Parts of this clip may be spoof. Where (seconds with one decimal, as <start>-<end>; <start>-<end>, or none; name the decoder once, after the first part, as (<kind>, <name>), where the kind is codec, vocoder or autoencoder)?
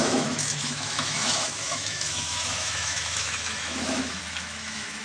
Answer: 0.0-5.0 (autoencoder, DAC-VAE)